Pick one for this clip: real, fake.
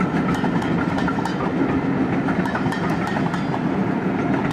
real